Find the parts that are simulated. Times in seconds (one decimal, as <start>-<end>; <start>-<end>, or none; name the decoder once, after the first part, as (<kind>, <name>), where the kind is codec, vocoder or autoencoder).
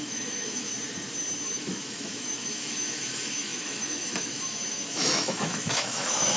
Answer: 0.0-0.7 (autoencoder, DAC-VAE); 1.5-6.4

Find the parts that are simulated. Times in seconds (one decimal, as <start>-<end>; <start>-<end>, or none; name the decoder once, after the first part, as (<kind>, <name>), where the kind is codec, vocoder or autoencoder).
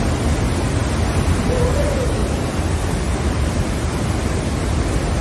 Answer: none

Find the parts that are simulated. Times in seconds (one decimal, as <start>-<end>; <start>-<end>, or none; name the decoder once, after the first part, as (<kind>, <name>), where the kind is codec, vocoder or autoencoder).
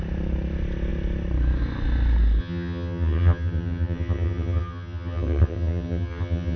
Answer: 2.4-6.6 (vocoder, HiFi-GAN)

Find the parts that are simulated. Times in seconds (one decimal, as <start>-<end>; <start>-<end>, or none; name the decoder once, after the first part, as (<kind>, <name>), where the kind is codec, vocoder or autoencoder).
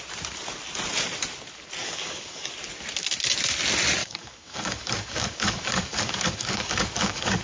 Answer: 1.8-2.5 (codec, DAC); 4.0-7.4